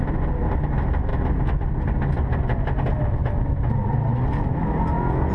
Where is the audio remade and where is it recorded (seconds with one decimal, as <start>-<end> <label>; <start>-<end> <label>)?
0.0-5.3 recorded